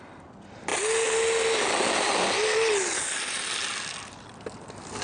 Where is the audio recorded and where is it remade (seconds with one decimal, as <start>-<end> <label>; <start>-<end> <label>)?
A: 0.0-5.0 recorded